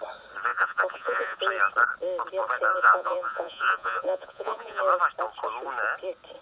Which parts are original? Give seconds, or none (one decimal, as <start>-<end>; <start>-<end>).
0.0-0.5; 1.4-2.7; 4.8-6.4